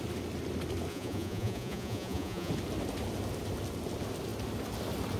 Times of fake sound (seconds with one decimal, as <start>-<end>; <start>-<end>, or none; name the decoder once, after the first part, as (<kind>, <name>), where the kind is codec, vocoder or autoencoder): 0.9-2.5 (vocoder, Vocos)